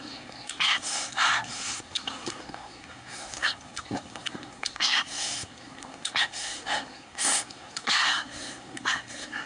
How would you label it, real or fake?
fake